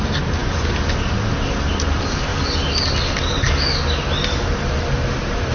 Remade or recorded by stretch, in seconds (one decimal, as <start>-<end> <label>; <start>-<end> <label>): 0.0-0.4 remade; 0.4-1.6 recorded; 1.6-2.3 remade; 2.3-3.5 recorded; 3.5-5.5 remade